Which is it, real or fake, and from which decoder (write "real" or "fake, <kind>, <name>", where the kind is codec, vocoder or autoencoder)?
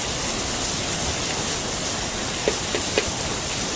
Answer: real